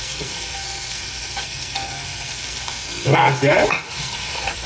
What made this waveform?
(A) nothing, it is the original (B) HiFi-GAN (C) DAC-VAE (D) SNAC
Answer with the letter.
D